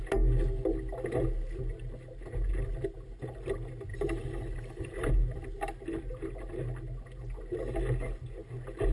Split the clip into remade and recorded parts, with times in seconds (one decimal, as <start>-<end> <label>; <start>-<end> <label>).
0.0-3.9 recorded; 3.9-5.1 remade; 5.1-8.9 recorded